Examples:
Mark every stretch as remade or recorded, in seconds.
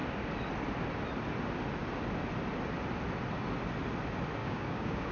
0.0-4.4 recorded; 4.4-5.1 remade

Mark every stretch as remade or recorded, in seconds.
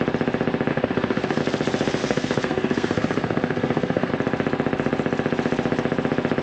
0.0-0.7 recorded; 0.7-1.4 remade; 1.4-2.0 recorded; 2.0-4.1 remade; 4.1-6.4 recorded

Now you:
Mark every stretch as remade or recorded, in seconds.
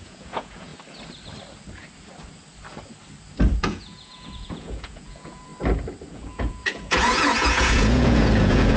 0.0-0.7 remade; 0.7-3.6 recorded; 3.6-5.5 remade; 5.5-6.1 recorded; 6.1-8.8 remade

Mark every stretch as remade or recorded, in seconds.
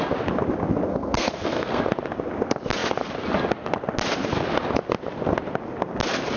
0.0-0.9 recorded; 0.9-1.8 remade; 1.8-6.4 recorded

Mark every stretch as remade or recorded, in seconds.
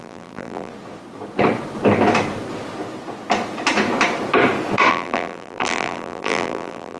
0.0-0.7 remade; 0.7-4.9 recorded; 4.9-7.0 remade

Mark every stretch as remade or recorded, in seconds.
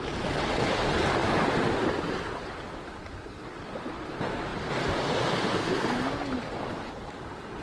0.0-7.6 recorded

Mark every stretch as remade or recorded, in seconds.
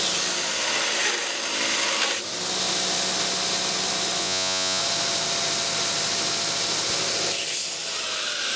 0.0-4.2 recorded; 4.2-4.8 remade; 4.8-8.6 recorded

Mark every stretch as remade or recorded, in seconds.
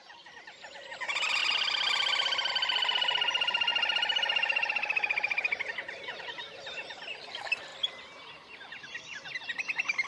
0.0-3.7 remade; 3.7-6.2 recorded; 6.2-7.7 remade; 7.7-9.0 recorded; 9.0-10.1 remade